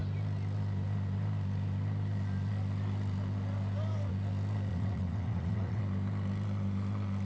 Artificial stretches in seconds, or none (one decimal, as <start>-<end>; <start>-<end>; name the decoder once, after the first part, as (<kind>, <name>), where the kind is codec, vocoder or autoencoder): 4.7-5.8 (vocoder, WaveNeXt)